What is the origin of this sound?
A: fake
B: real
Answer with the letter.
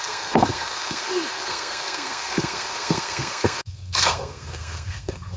A